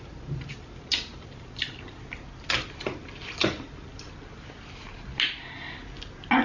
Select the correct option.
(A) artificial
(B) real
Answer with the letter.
B